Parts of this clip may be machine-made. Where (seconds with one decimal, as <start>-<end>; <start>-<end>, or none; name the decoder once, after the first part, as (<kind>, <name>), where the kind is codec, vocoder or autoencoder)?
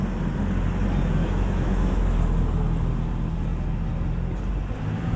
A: 1.2-2.2 (autoencoder, DAC-VAE)